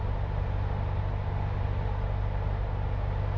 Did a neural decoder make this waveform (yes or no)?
no